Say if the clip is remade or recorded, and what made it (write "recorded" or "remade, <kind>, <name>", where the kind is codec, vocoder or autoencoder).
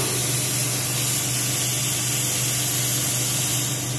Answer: recorded